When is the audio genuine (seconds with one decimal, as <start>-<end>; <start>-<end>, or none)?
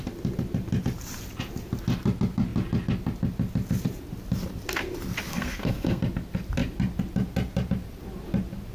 0.0-5.3; 6.0-8.7